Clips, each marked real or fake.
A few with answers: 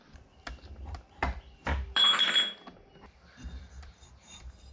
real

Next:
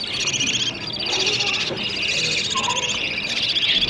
real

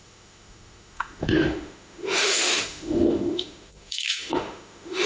fake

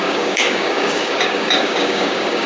fake